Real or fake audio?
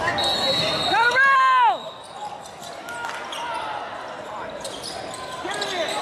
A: real